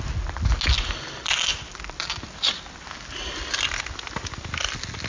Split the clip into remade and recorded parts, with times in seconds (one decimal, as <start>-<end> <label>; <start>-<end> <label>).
0.0-5.1 recorded